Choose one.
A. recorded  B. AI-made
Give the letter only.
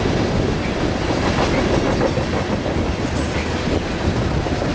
A